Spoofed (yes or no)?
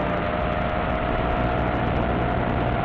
no